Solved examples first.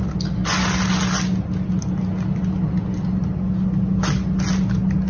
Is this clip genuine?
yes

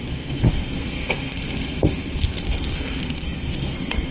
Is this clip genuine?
no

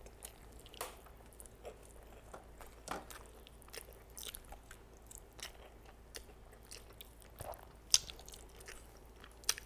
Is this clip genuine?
yes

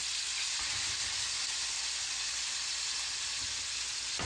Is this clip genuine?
yes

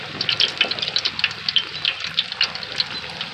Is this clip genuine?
yes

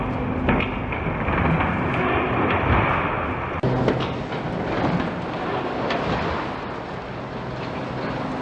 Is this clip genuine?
yes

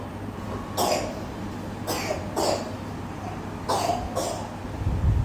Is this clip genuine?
yes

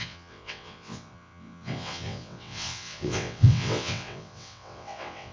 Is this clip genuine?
no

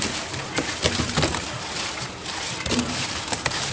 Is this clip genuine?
no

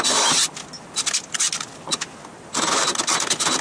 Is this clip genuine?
yes